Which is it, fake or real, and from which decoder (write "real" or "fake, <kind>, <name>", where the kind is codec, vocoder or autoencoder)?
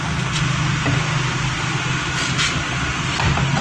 real